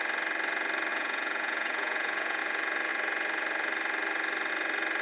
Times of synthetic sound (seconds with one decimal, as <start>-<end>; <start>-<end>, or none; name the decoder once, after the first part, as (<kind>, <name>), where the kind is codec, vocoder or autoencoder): 0.9-2.4 (vocoder, Vocos)